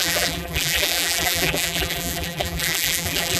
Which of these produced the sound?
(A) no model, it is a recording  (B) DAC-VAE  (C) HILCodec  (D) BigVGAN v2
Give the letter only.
D